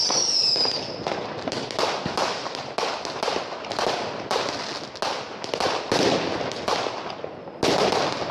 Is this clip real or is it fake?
real